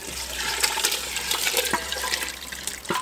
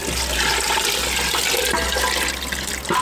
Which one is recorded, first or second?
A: second